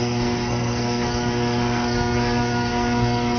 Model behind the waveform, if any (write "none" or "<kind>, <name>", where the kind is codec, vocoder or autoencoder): codec, SNAC